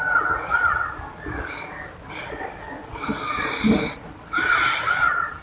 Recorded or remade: recorded